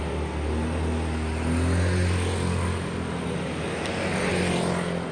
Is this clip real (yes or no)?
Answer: yes